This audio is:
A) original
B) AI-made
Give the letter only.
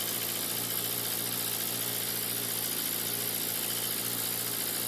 A